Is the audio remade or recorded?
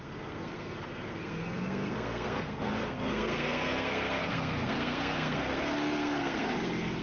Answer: remade